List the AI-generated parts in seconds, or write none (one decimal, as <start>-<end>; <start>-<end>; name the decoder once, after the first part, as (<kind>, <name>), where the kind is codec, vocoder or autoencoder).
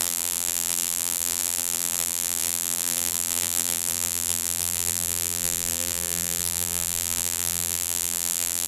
0.0-8.7 (vocoder, BigVGAN v2)